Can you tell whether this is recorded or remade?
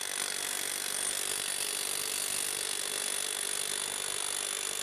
recorded